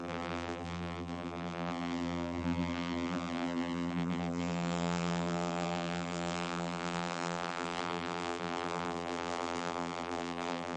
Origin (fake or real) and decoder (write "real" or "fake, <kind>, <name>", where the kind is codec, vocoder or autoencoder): fake, vocoder, BigVGAN v2